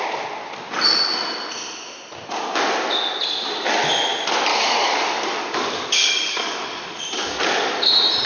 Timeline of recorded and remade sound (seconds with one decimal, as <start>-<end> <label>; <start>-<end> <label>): 0.0-4.5 recorded; 4.5-7.4 remade; 7.4-8.3 recorded